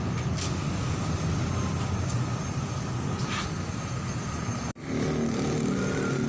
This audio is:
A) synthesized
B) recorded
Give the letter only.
B